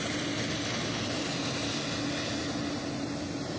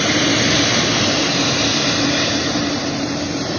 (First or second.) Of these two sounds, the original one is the first